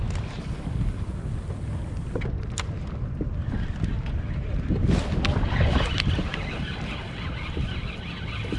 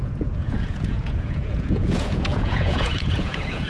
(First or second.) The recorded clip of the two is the first